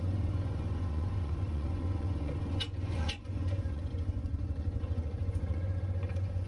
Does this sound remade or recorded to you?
remade